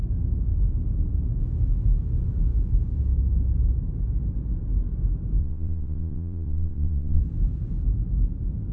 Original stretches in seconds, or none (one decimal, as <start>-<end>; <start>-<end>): 0.0-5.4; 7.2-8.7